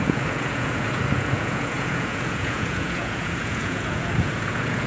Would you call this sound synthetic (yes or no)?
yes